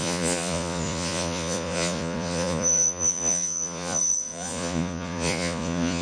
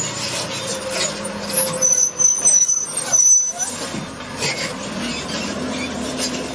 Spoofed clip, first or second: first